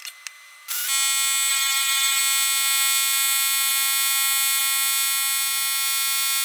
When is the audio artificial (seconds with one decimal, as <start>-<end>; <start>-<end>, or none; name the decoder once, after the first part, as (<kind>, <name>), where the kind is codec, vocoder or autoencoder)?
1.5-2.2 (autoencoder, DAC-VAE)